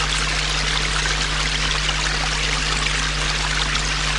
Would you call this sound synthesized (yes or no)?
no